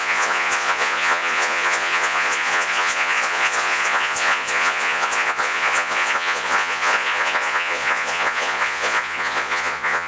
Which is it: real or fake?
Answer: fake